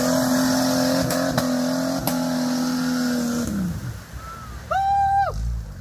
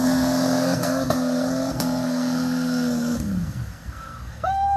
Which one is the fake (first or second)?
second